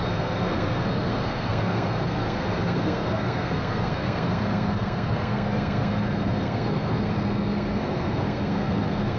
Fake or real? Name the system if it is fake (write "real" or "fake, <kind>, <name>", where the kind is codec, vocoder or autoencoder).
fake, codec, SNAC